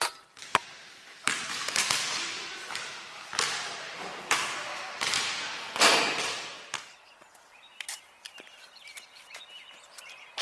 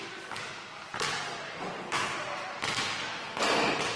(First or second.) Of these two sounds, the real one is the second